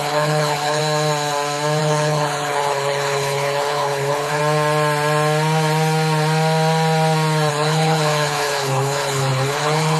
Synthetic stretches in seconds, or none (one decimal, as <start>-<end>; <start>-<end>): 0.0-0.8; 1.8-4.4; 7.5-10.0